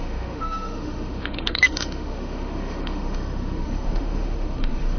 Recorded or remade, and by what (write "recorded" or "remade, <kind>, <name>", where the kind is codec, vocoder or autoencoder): remade, autoencoder, DAC-VAE